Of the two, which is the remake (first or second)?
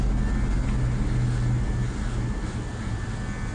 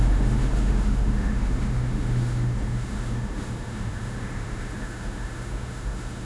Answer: second